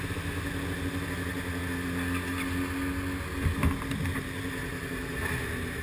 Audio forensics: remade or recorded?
recorded